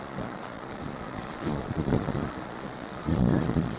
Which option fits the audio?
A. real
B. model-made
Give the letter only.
B